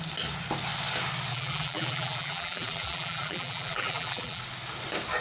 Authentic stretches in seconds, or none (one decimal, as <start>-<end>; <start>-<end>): 0.0-1.3; 4.4-5.2